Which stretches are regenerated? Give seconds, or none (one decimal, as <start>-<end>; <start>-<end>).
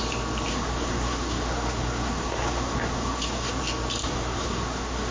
0.5-3.6; 4.0-5.1